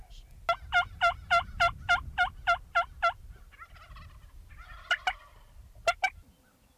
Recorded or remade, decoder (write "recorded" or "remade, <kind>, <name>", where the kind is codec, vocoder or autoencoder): recorded